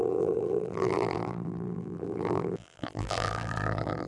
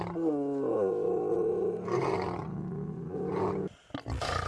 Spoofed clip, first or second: first